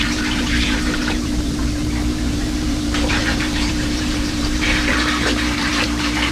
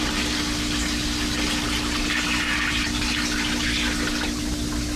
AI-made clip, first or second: first